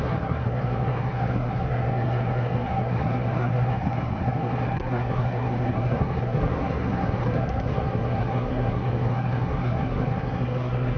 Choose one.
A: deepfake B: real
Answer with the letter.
A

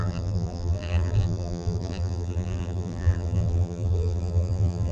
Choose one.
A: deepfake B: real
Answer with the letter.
A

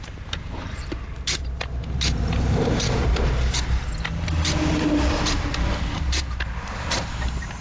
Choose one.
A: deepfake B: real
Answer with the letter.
A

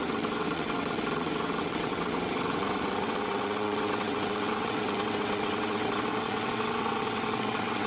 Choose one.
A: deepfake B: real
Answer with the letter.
A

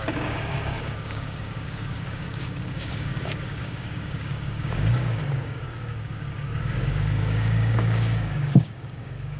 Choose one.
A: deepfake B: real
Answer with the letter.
A